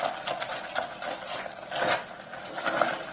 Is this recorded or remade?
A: recorded